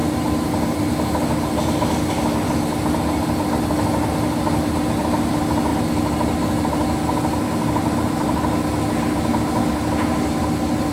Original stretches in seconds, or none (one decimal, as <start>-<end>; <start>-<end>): 0.0-10.9